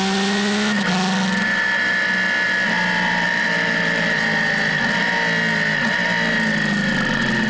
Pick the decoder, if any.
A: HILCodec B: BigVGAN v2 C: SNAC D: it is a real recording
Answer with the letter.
D